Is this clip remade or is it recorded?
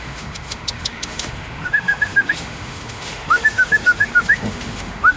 remade